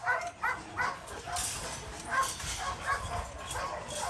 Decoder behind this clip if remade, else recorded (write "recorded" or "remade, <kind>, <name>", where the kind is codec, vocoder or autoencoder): recorded